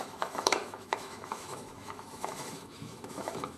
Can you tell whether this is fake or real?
fake